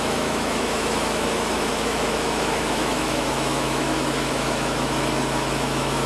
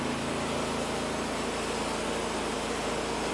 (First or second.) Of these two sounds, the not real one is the first